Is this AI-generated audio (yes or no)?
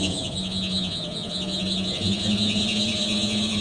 yes